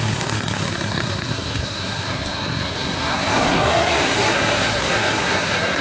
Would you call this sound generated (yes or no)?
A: yes